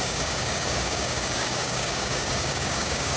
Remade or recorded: remade